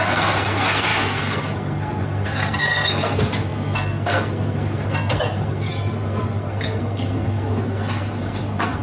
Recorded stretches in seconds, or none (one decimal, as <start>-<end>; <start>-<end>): none